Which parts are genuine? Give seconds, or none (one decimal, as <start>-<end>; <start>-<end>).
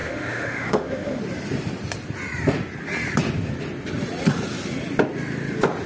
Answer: 1.2-5.9